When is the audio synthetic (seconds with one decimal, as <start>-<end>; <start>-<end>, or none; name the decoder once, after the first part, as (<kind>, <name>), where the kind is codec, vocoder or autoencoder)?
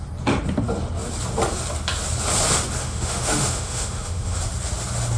2.8-4.4 (autoencoder, DAC-VAE)